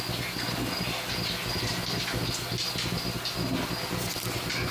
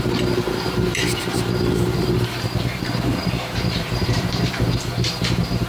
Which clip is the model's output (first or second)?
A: second